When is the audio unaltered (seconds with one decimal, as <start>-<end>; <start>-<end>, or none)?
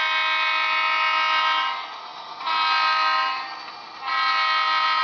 0.0-5.0